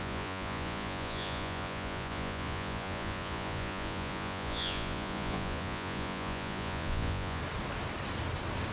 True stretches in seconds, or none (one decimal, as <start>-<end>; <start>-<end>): 7.4-8.7